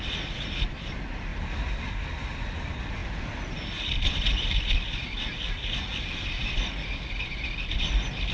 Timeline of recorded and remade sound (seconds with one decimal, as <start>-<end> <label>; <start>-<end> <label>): 0.0-8.3 recorded